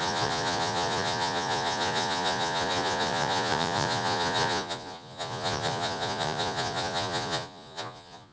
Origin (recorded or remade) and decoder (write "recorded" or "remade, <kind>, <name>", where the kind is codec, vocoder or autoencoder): remade, vocoder, Vocos